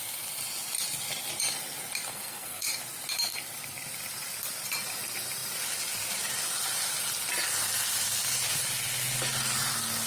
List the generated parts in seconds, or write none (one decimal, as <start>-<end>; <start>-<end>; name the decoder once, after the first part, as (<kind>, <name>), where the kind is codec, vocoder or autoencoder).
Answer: 2.1-2.7 (codec, SNAC)

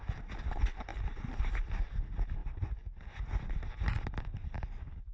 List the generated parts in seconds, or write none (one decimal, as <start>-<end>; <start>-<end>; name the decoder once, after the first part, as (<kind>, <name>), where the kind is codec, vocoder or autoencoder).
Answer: 0.9-1.5 (vocoder, BigVGAN v2)

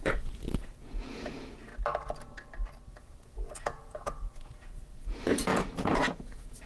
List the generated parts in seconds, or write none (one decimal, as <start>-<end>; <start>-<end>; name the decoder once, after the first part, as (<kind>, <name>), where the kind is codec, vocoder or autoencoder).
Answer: 0.0-1.7 (vocoder, Vocos); 2.9-6.7

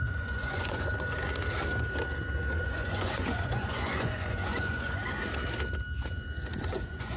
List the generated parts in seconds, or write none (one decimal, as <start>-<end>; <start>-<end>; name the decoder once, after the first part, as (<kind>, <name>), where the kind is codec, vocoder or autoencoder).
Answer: 0.0-0.9 (vocoder, Vocos); 2.5-5.0; 6.7-7.2

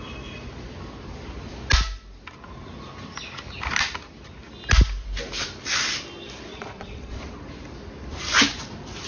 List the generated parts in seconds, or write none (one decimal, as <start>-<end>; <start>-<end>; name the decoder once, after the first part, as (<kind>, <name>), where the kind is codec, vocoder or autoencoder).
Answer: 6.5-7.2 (vocoder, Vocos)

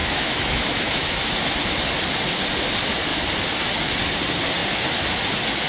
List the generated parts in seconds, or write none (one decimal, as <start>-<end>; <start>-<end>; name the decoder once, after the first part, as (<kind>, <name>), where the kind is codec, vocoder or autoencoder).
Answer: 0.0-1.3 (autoencoder, DAC-VAE)

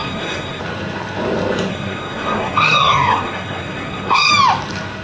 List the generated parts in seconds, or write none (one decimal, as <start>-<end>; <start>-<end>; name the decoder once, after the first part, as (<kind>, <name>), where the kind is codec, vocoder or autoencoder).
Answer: 0.0-0.6 (codec, SNAC); 1.7-4.3